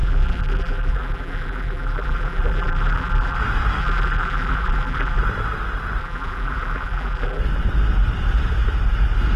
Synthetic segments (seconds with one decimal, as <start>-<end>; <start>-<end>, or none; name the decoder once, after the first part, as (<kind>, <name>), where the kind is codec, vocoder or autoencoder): 0.0-3.4 (vocoder, BigVGAN v2); 3.8-5.2; 6.0-7.4